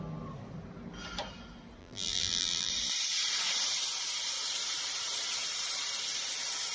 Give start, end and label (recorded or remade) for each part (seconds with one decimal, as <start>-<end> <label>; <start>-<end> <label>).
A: 0.0-1.8 recorded; 1.8-2.7 remade; 2.7-6.7 recorded